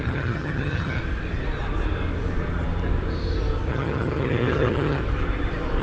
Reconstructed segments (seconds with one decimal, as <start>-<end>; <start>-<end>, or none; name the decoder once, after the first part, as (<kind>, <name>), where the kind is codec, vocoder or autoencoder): 0.0-1.0 (vocoder, HiFi-GAN); 3.7-5.0